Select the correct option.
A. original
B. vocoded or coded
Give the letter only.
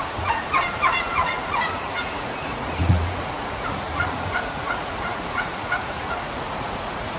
B